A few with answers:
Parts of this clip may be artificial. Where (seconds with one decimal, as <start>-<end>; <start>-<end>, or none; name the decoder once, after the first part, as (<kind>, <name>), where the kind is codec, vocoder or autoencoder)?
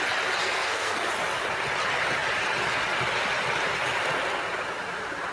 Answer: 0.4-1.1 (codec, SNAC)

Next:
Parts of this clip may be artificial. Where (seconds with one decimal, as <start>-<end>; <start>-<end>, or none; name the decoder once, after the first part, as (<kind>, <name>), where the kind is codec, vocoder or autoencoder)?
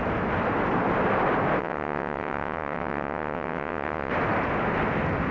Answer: 1.6-4.1 (vocoder, WaveNeXt)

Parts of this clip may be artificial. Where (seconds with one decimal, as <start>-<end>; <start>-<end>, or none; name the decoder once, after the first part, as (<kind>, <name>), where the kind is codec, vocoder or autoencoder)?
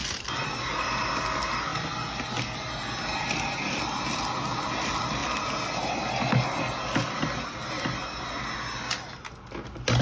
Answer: none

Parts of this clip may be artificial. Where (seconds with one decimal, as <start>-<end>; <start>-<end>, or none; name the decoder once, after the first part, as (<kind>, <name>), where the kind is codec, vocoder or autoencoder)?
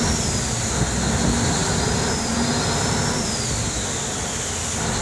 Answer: none